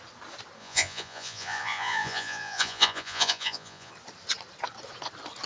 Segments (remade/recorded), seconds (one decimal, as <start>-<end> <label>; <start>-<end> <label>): 0.0-0.6 recorded; 0.6-3.9 remade; 3.9-5.5 recorded